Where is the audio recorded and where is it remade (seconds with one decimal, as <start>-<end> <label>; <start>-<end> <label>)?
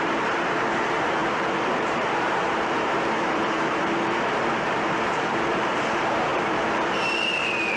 0.0-7.8 remade